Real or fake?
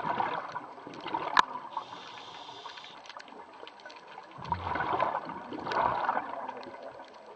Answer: real